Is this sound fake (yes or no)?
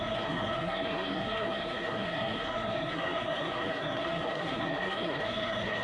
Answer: yes